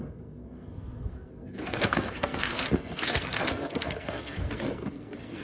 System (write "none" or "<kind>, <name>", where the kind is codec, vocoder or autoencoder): codec, SNAC